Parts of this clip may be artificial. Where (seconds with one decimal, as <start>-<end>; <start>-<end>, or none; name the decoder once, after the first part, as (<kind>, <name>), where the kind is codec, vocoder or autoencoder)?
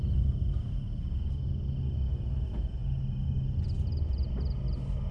none